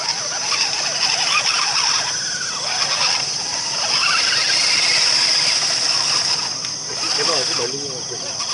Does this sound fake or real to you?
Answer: real